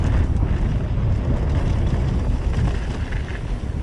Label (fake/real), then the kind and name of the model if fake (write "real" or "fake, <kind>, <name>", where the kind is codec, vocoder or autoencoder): real